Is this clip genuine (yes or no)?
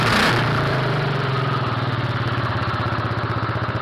yes